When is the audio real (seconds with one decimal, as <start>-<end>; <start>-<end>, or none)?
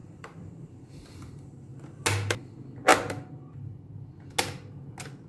2.0-5.3